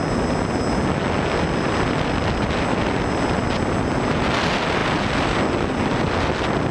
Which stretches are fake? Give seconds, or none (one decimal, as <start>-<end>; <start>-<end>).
none